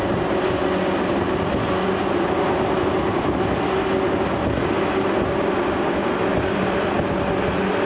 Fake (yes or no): no